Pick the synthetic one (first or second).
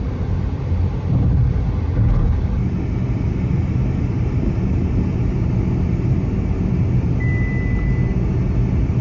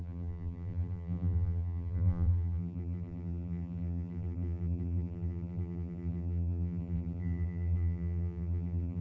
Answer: second